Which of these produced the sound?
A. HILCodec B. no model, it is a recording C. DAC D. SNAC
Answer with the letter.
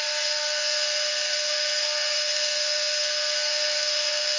D